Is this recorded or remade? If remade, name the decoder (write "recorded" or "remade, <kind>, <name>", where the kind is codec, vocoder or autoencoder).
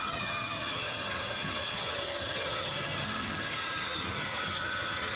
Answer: remade, vocoder, HiFi-GAN